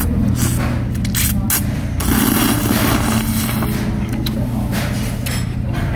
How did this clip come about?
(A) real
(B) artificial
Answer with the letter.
A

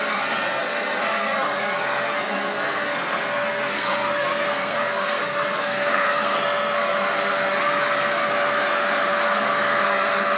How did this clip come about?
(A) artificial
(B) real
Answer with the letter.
A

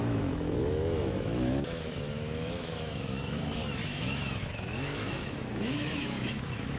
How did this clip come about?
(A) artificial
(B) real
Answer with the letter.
A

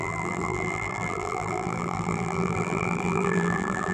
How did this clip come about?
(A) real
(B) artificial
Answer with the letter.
B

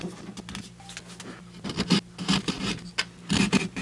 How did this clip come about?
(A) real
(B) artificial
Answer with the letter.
A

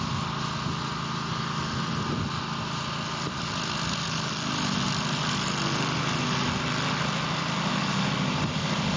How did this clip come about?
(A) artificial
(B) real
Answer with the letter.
B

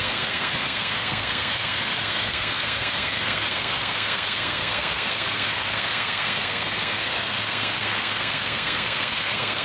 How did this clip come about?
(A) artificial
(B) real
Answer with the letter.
A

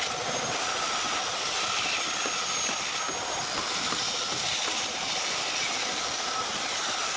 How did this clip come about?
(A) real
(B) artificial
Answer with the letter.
A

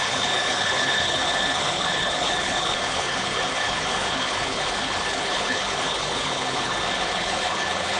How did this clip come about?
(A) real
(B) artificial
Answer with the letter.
B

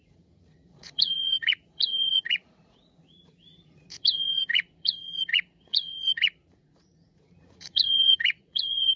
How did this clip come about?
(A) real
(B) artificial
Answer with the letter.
B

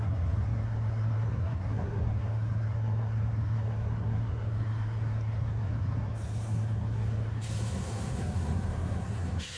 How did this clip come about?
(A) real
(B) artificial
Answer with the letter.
B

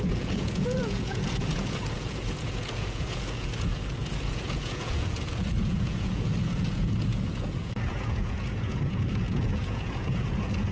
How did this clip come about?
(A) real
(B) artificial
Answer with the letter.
B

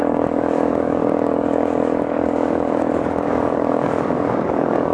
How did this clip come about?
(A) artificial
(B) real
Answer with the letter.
A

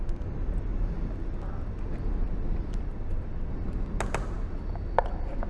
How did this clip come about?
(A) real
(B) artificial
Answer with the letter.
A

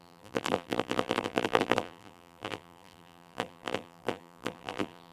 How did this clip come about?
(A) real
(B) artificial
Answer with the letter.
B